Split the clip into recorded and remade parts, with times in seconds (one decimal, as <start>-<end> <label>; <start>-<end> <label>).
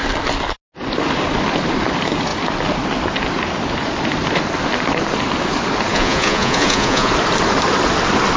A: 0.0-5.9 recorded; 5.9-7.1 remade; 7.1-8.4 recorded